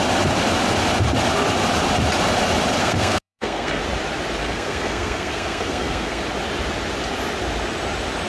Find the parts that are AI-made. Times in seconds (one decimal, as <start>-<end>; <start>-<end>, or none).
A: 2.8-3.8; 4.4-6.2